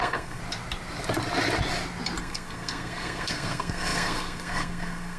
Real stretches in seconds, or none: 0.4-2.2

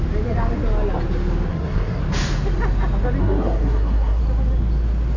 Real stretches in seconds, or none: 0.0-1.5; 2.0-3.2; 4.2-5.2

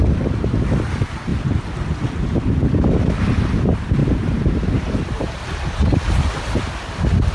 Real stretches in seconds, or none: 0.0-1.3; 2.5-4.0; 6.0-7.3

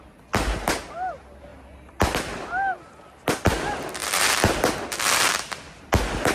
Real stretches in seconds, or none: 0.0-6.3

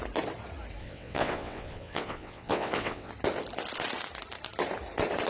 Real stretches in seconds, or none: 0.0-0.8; 3.1-5.3